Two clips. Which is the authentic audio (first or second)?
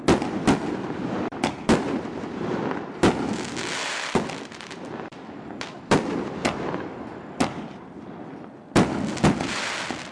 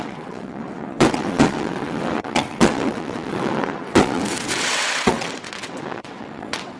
first